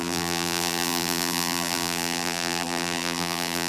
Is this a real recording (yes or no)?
no